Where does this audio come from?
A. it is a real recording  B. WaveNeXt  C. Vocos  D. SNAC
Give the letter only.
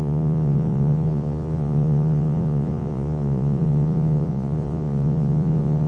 C